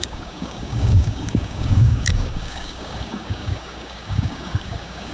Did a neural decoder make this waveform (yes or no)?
yes